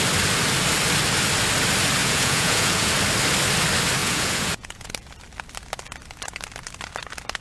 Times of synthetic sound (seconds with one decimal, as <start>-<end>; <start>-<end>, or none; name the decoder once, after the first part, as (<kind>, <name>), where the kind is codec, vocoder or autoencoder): 2.0-2.9 (vocoder, Vocos); 4.0-4.9